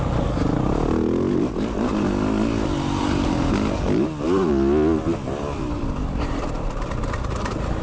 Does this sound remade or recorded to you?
recorded